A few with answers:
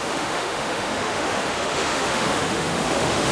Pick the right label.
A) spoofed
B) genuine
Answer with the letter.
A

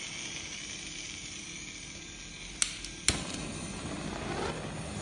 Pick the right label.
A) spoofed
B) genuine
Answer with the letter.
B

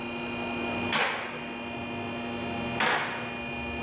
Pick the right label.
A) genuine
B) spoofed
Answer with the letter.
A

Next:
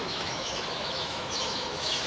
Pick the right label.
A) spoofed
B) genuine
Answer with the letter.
A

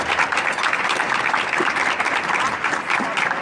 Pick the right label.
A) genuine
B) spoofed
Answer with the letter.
A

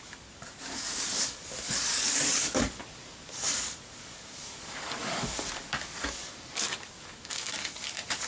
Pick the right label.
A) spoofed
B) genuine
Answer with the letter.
A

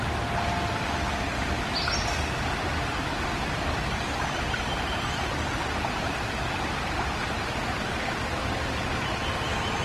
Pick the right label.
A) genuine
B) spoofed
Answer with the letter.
A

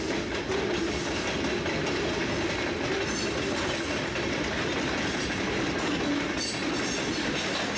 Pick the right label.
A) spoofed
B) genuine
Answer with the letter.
B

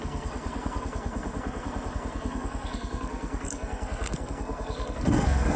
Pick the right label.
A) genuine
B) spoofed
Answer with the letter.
B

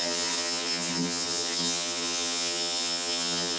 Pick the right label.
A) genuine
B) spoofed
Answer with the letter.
B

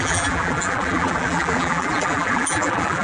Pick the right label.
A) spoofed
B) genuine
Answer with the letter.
A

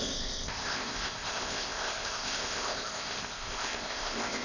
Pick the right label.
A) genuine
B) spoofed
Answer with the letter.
B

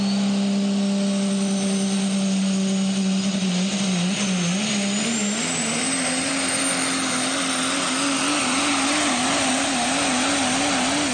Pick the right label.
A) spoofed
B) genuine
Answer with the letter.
B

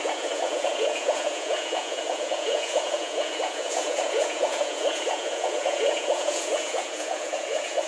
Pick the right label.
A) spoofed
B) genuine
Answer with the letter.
A